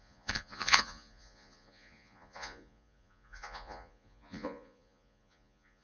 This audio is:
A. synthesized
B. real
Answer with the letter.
A